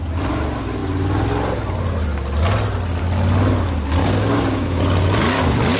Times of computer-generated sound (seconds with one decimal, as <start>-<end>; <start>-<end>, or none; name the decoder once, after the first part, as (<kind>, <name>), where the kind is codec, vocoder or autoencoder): 4.0-4.8 (codec, DAC)